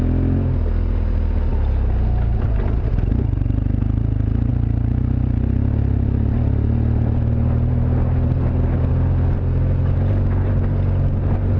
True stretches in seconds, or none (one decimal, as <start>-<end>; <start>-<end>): 0.0-11.6